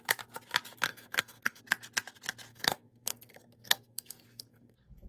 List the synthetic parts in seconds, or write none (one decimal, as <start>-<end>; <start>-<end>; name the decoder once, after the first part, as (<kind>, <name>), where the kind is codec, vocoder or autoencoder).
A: 0.9-1.6 (codec, SNAC); 2.5-5.1